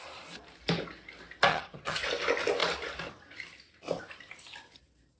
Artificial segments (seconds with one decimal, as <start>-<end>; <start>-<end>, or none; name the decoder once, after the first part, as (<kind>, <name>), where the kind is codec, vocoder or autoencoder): 1.5-2.0 (vocoder, HiFi-GAN)